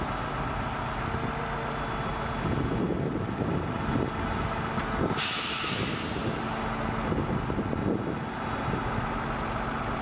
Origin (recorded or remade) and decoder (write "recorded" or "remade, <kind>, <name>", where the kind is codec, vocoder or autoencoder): recorded